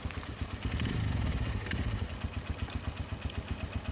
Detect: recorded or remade recorded